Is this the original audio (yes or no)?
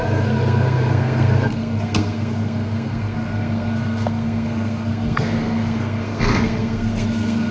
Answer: no